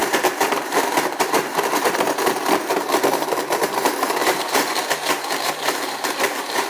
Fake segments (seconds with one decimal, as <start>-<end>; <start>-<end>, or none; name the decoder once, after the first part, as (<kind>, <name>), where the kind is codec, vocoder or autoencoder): 0.0-6.7 (vocoder, BigVGAN v2)